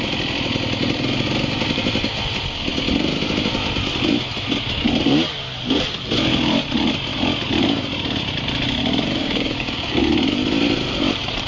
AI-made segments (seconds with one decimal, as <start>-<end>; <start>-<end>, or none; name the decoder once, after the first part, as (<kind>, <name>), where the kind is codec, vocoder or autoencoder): 9.2-10.0 (codec, DAC)